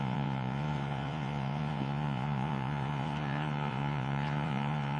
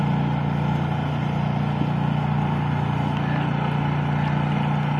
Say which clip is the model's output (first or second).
first